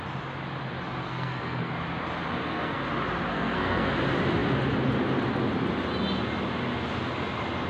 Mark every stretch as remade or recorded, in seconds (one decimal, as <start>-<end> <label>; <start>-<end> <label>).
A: 0.0-1.0 recorded; 1.0-1.7 remade; 1.7-2.4 recorded; 2.4-2.9 remade; 2.9-3.3 recorded; 3.3-3.9 remade; 3.9-7.7 recorded